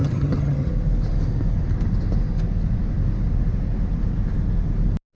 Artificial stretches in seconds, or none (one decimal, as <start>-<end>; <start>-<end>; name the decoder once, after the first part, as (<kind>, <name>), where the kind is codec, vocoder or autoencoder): 0.0-0.7 (vocoder, HiFi-GAN)